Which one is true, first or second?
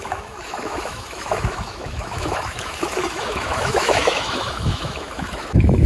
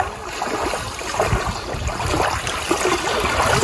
second